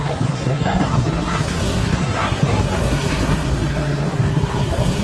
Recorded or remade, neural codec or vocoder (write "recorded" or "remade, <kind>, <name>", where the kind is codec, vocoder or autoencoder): remade, codec, SNAC